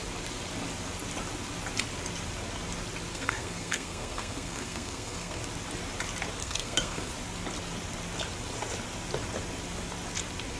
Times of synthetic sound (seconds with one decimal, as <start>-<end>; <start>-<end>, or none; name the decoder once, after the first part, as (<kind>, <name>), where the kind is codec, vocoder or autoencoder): 3.1-5.4 (codec, SNAC); 6.4-7.1